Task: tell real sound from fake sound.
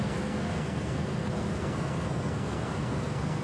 fake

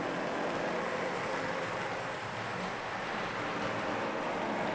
real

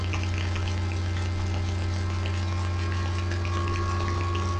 real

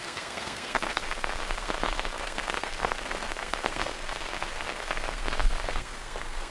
fake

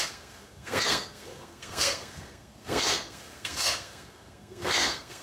fake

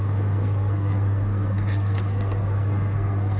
fake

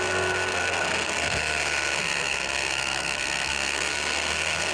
fake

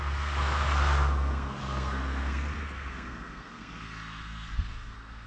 fake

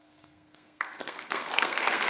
fake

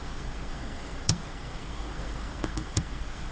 fake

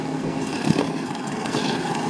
fake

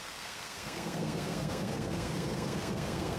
fake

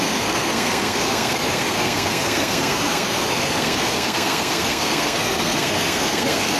fake